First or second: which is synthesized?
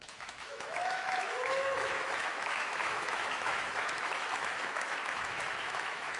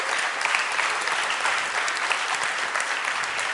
first